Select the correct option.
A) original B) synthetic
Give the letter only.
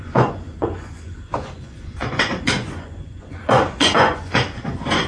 B